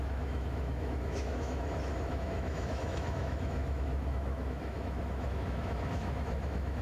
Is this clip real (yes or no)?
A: no